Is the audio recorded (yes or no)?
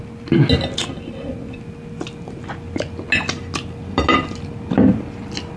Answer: yes